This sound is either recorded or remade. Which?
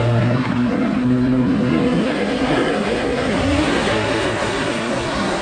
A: remade